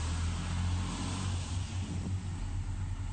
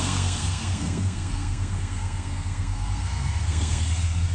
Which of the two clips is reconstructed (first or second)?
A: second